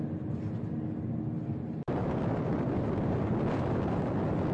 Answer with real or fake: real